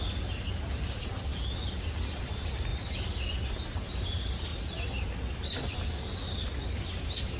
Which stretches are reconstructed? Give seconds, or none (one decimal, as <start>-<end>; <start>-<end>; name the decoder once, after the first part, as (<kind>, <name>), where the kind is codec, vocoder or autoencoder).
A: 0.0-1.3 (vocoder, BigVGAN v2); 2.2-2.7; 3.7-4.5; 6.6-7.4

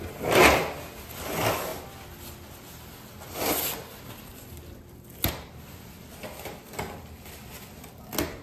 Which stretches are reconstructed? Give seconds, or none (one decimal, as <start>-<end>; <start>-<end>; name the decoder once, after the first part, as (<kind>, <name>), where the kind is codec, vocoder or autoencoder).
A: none

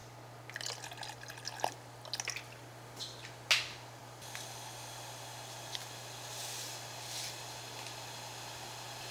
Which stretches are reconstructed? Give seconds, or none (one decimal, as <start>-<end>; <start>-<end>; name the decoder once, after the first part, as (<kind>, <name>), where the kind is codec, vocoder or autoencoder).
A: none

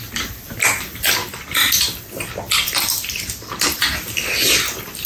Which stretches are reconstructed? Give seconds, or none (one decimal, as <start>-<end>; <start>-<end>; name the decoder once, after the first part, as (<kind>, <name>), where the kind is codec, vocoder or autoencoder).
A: 0.0-1.2 (vocoder, BigVGAN v2); 2.3-5.1

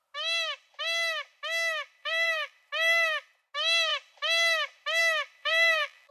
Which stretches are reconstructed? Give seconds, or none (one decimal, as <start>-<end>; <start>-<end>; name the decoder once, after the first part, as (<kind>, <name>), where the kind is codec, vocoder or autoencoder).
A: 2.0-2.5 (vocoder, BigVGAN v2); 5.4-6.1

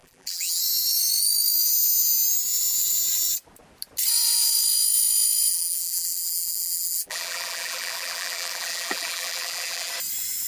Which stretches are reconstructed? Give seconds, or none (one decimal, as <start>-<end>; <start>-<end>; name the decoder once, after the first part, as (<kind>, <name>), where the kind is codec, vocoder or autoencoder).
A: 0.0-0.6 (vocoder, BigVGAN v2); 5.5-9.9

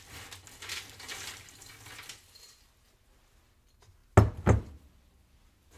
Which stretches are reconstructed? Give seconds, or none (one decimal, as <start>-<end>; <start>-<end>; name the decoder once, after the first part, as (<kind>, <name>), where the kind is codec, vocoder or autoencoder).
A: none

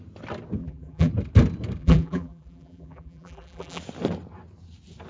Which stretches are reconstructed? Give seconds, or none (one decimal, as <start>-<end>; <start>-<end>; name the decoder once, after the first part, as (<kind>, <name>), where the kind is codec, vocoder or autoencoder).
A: 0.6-1.1 (vocoder, BigVGAN v2); 1.8-3.8